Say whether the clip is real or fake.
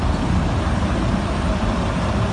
real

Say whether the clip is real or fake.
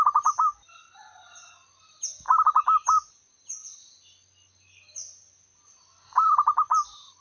real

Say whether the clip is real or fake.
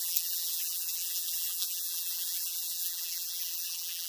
fake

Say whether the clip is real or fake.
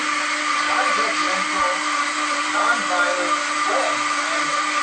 real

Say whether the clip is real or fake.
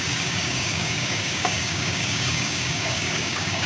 fake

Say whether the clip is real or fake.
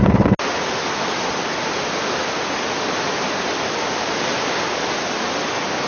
real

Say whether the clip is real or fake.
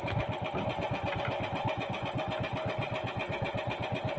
real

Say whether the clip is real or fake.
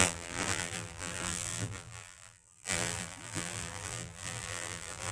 fake